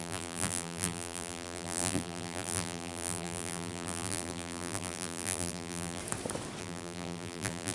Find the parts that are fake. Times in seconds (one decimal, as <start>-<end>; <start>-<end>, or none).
0.0-6.0; 6.6-7.7